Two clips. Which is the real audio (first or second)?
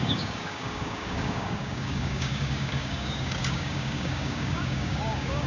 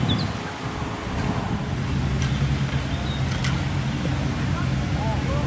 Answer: second